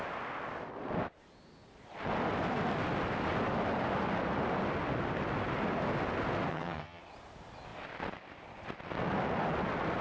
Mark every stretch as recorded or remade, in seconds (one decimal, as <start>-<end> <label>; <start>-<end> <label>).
0.0-6.5 recorded; 6.5-7.0 remade; 7.0-10.0 recorded